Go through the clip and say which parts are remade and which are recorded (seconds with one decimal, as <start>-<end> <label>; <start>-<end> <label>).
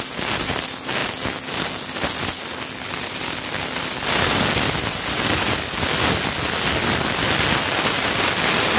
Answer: 0.0-8.8 recorded